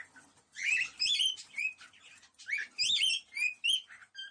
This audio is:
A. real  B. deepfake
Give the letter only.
A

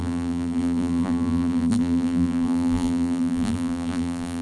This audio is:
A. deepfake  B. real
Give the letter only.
A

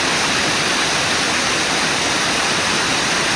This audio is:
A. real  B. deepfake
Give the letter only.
B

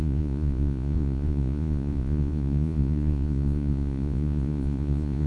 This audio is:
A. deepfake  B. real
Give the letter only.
A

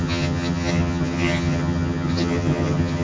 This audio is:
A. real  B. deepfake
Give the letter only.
B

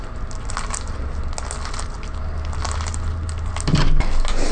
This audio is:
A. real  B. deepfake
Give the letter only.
A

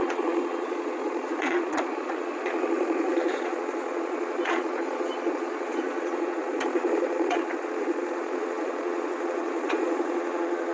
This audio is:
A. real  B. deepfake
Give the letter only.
B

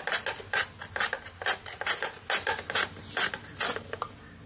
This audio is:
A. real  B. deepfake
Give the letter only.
A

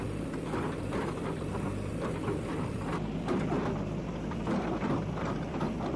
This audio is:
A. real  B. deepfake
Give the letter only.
A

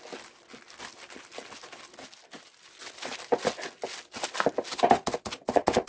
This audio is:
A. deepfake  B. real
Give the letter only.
B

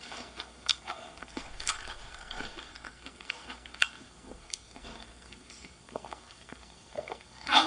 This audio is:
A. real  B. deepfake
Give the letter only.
B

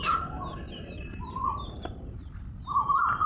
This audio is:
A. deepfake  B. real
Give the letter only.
B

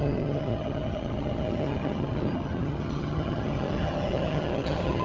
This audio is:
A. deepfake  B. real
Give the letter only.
A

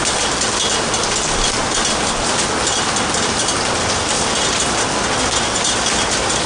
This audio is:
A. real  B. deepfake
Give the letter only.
A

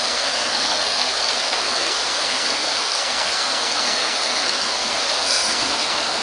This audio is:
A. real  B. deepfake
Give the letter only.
B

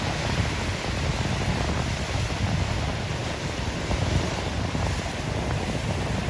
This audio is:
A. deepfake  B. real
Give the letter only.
B